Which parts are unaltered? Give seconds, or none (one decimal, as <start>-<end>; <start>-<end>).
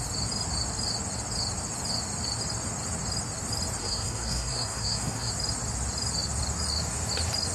0.0-3.8; 5.3-7.5